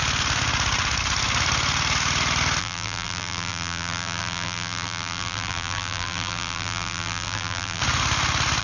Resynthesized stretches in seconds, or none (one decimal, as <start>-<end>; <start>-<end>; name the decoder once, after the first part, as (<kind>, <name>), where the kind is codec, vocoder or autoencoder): 2.6-7.8 (vocoder, BigVGAN v2)